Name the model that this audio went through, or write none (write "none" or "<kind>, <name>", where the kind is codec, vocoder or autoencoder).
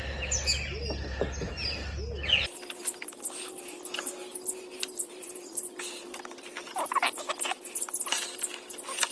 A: none